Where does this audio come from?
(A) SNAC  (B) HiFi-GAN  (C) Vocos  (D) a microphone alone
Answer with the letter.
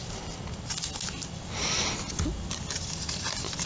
D